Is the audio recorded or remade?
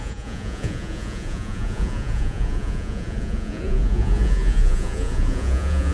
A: remade